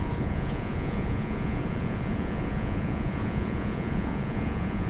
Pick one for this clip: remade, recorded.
remade